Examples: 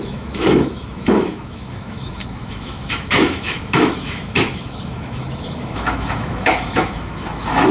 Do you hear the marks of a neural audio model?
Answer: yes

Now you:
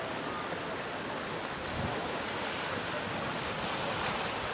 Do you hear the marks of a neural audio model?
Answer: no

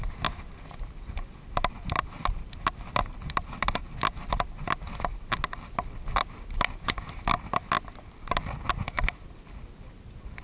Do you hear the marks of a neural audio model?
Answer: no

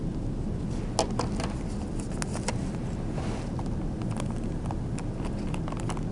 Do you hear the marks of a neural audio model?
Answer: no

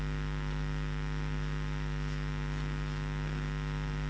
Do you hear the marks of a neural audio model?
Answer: no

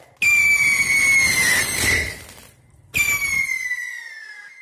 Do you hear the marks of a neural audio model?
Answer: no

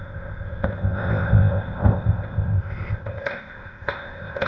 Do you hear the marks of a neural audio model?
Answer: yes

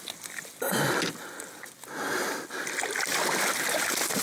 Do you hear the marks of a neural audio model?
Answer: no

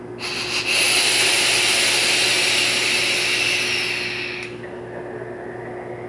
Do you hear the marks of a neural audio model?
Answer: no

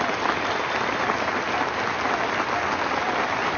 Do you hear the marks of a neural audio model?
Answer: no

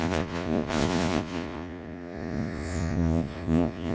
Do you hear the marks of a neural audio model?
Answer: yes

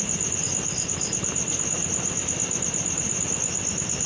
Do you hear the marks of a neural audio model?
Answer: no